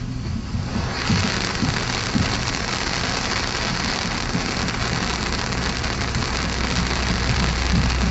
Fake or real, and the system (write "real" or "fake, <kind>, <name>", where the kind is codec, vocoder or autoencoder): real